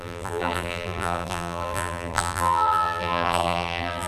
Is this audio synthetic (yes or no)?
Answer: yes